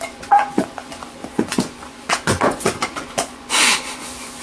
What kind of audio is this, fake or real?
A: fake